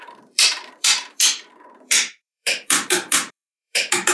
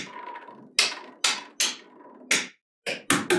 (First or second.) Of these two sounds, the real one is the second